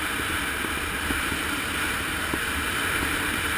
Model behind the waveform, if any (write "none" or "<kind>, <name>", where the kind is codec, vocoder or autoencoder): none